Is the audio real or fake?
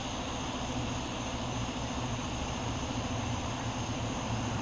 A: fake